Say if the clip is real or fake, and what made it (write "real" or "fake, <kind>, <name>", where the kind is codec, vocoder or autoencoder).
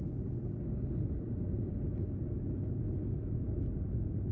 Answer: real